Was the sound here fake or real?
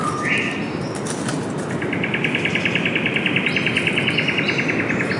real